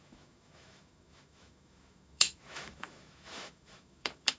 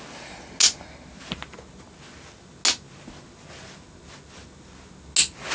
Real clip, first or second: second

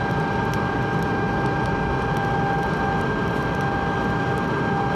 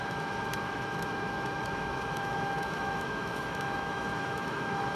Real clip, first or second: first